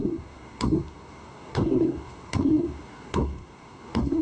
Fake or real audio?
fake